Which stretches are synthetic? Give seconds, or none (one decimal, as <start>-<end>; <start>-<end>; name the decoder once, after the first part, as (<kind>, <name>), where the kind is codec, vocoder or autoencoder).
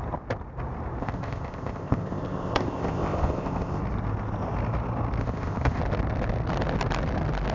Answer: 1.0-3.8 (codec, ZipCodec); 5.2-5.8